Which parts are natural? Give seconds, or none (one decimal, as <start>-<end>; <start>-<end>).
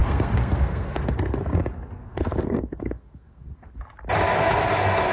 1.6-2.0; 3.8-5.1